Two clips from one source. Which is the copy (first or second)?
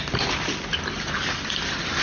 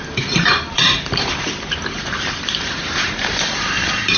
second